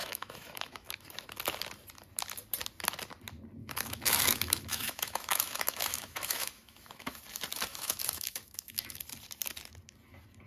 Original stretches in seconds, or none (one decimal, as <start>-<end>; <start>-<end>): 1.0-3.6; 7.2-7.7; 9.0-10.5